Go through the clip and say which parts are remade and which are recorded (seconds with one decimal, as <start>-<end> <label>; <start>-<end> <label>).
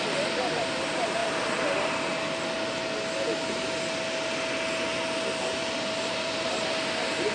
0.0-1.2 remade; 1.2-5.4 recorded; 5.4-7.3 remade